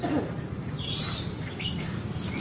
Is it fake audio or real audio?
real